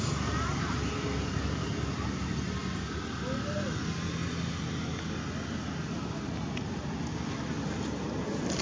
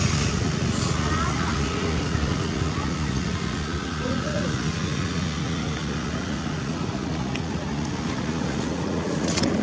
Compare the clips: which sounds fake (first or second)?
second